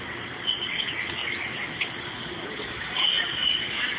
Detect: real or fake real